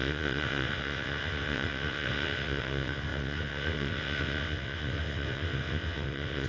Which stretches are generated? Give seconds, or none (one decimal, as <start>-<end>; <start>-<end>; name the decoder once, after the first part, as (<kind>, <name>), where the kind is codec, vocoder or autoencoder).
0.0-6.5 (vocoder, WaveNeXt)